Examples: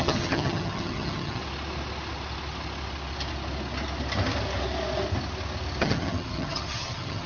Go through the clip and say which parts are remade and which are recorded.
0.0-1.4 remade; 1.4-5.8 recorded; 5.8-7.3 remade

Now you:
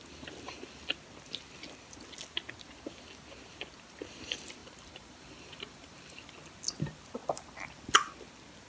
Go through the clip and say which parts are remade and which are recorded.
0.0-4.6 recorded; 4.6-6.3 remade; 6.3-8.7 recorded

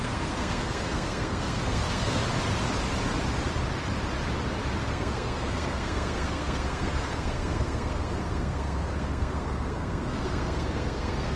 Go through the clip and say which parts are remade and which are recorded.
0.0-2.2 remade; 2.2-4.8 recorded; 4.8-11.4 remade

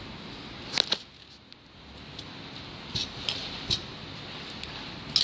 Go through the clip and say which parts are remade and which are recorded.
0.0-5.2 recorded

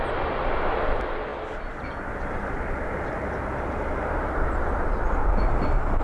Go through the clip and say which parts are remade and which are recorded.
0.0-6.0 recorded

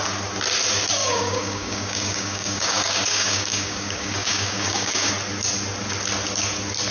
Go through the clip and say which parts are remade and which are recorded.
0.0-1.0 recorded; 1.0-5.1 remade; 5.1-6.9 recorded